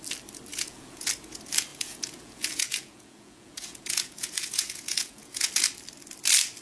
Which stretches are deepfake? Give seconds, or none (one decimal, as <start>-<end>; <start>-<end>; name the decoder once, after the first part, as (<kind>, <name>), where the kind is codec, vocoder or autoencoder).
0.5-1.1 (vocoder, Vocos); 1.7-5.5